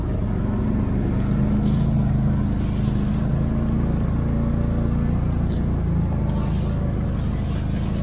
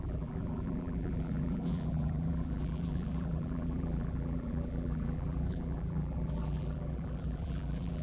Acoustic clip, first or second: first